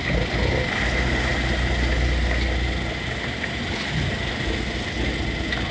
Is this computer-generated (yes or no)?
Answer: no